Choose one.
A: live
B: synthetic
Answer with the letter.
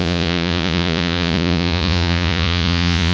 B